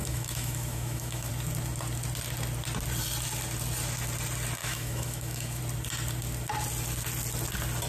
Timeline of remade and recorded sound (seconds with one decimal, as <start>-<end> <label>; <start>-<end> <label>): 0.0-1.3 remade; 1.3-4.6 recorded; 4.6-5.6 remade; 5.6-7.9 recorded